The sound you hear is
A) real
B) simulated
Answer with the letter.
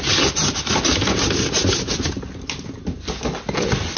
A